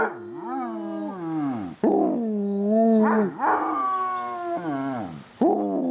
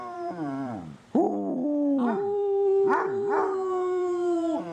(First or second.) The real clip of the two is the first